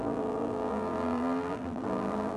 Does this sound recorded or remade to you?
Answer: remade